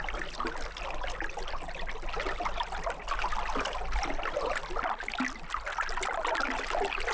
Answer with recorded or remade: recorded